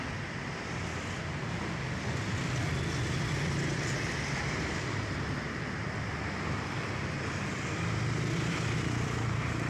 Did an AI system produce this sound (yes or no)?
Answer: no